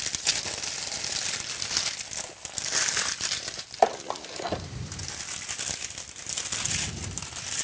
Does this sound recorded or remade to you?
recorded